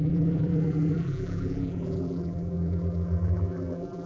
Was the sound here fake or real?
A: fake